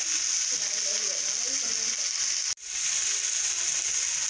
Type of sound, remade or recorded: recorded